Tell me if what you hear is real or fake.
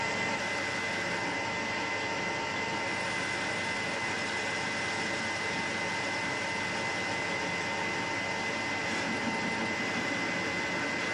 real